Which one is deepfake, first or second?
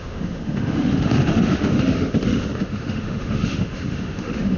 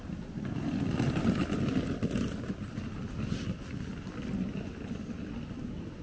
first